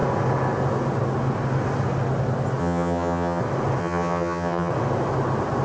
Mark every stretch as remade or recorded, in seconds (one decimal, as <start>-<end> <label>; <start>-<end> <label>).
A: 0.0-2.6 recorded; 2.6-3.4 remade; 3.4-3.8 recorded; 3.8-4.7 remade; 4.7-5.6 recorded